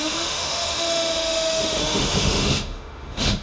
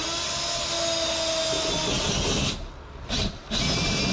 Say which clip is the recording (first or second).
second